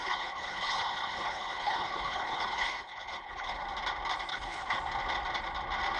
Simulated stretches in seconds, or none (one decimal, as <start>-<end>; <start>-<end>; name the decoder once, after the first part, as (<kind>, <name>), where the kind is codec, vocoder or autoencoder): 0.0-3.6 (codec, HILCodec); 4.3-4.8